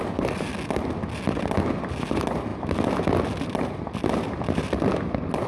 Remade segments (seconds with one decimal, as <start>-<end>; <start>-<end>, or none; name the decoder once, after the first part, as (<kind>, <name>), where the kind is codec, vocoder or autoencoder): none